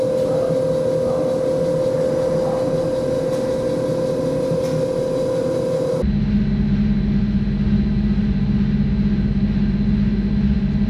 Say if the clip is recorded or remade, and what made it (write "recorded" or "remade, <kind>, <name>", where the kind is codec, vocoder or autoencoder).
recorded